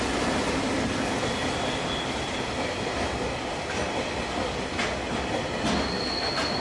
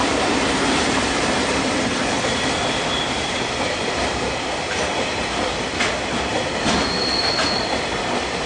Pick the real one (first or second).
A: first